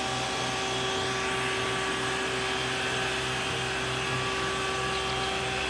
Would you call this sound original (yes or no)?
yes